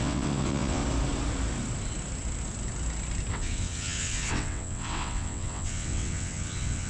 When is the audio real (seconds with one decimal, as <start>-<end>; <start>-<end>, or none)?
0.8-3.3